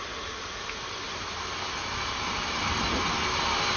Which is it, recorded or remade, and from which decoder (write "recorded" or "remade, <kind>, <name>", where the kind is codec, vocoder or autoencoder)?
recorded